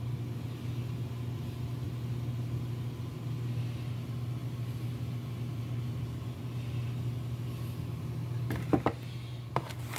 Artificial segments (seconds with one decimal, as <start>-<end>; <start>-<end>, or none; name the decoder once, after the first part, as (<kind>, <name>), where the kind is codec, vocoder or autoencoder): none